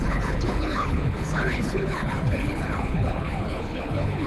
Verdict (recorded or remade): remade